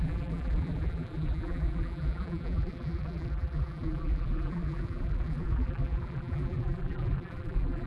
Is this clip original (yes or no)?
no